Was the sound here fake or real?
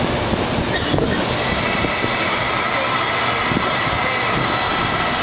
real